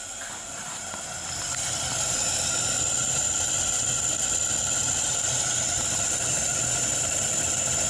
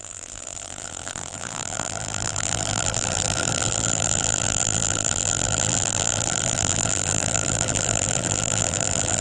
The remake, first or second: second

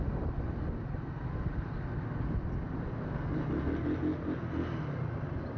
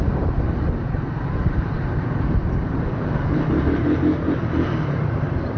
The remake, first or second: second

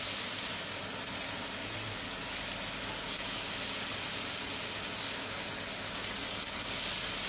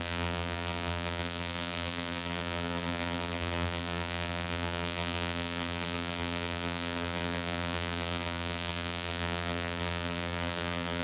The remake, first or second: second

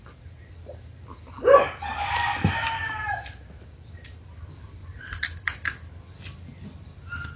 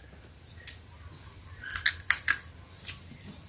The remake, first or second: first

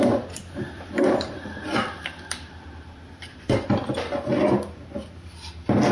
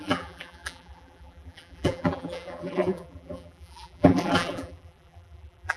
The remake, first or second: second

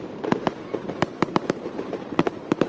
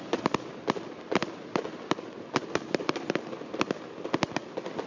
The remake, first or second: first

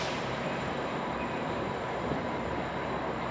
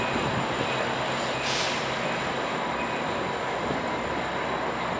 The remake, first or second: first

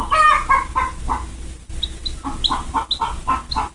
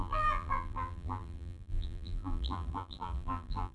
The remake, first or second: second